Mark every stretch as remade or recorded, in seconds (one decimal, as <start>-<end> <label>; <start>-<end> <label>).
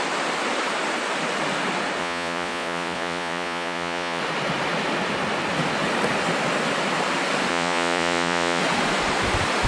0.0-2.0 recorded; 2.0-4.2 remade; 4.2-7.5 recorded; 7.5-8.6 remade; 8.6-9.7 recorded